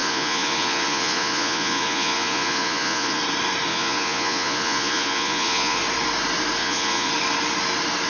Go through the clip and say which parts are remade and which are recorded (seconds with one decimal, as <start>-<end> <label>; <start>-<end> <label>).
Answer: 0.0-3.2 remade; 3.2-3.7 recorded; 3.7-5.8 remade; 5.8-6.6 recorded; 6.6-7.1 remade; 7.1-8.1 recorded